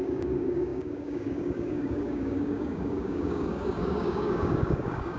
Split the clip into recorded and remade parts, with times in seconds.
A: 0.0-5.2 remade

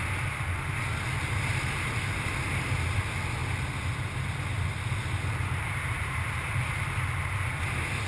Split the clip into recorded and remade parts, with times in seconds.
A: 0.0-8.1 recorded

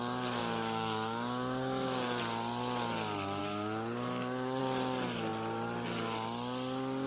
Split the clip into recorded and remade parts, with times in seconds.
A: 0.0-0.4 recorded; 0.4-2.2 remade; 2.2-3.4 recorded; 3.4-4.6 remade; 4.6-7.1 recorded